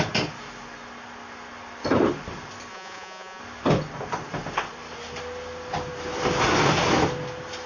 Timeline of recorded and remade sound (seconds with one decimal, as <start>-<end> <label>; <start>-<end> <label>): 0.0-2.7 recorded; 2.7-3.4 remade; 3.4-7.7 recorded